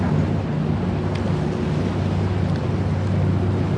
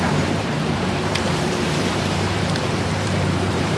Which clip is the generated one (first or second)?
second